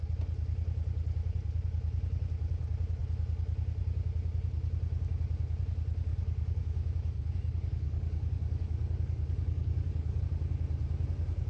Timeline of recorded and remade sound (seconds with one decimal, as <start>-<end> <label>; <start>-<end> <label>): 0.0-6.1 recorded; 6.1-10.2 remade; 10.2-11.5 recorded